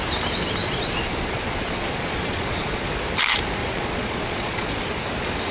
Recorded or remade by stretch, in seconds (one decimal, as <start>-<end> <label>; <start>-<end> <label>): 0.0-0.6 recorded; 0.6-2.8 remade; 2.8-3.6 recorded; 3.6-4.8 remade; 4.8-5.5 recorded